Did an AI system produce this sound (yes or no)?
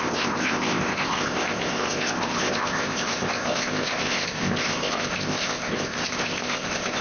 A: yes